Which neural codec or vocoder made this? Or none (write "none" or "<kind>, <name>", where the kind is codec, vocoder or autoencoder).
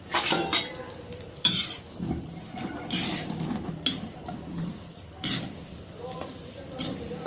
vocoder, BigVGAN v2